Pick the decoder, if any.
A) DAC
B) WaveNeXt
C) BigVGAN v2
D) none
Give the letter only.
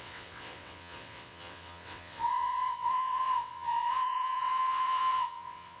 B